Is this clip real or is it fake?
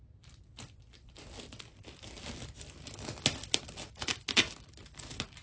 real